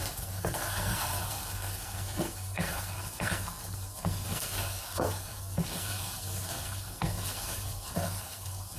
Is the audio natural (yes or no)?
no